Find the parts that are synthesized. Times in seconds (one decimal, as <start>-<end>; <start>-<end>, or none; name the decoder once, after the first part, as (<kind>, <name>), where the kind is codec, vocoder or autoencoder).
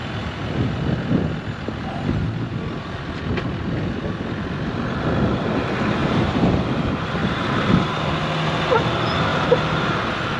6.0-6.6 (vocoder, BigVGAN v2); 7.2-7.9; 9.3-10.0